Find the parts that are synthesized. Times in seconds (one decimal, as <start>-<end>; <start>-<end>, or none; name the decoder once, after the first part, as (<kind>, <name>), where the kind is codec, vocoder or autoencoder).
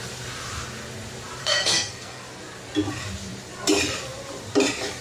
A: 1.4-2.2 (codec, SNAC)